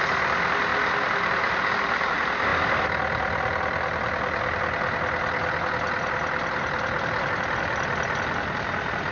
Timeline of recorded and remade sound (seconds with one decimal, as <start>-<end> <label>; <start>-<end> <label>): 0.0-0.7 remade; 0.7-1.8 recorded; 1.8-2.5 remade; 2.5-7.3 recorded; 7.3-9.1 remade